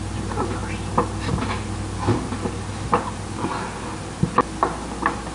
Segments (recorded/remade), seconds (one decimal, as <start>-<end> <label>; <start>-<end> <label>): 0.0-5.3 recorded